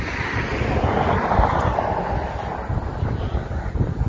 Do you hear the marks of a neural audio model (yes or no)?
yes